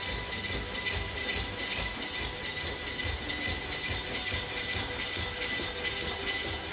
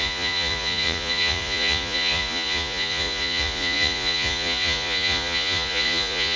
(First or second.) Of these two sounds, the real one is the first